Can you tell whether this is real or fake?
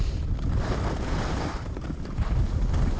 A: real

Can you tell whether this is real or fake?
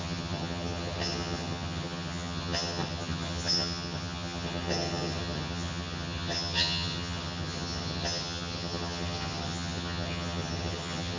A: fake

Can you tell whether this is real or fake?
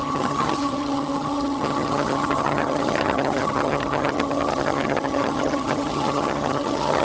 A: fake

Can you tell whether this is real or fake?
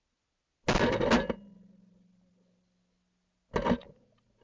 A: real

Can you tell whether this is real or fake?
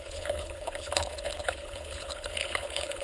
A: fake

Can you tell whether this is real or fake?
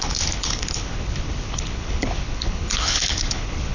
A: fake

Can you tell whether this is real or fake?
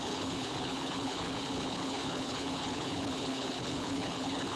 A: fake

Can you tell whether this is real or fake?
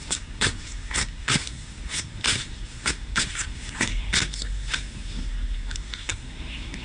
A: fake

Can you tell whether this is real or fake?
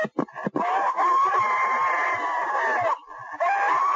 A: real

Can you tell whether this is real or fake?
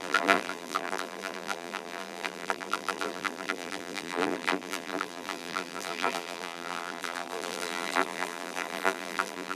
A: fake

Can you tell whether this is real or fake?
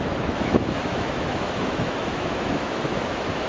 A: fake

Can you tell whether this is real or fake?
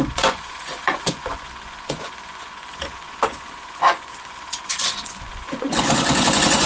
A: fake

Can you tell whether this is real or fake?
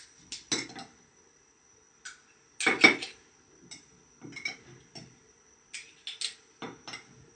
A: real